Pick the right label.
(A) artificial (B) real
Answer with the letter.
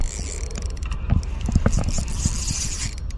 B